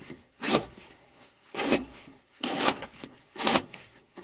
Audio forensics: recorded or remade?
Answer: remade